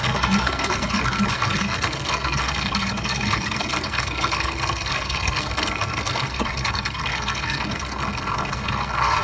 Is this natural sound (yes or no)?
no